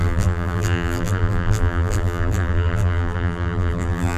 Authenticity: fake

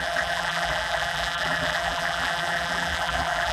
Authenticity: fake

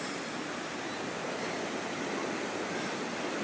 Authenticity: real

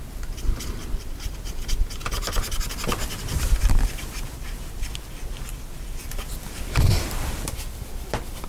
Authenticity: fake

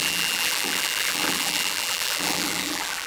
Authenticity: fake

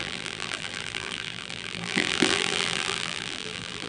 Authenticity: fake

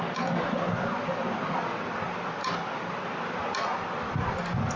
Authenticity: real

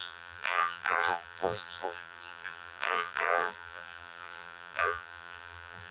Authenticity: fake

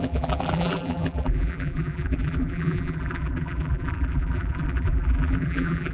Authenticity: fake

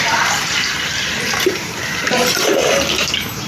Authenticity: fake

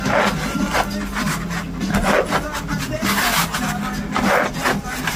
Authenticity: real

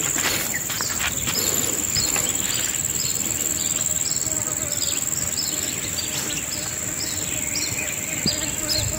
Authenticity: real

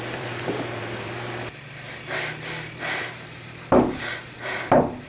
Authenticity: fake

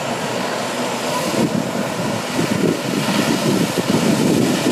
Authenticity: real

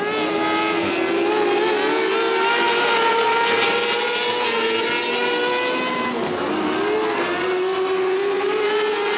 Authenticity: real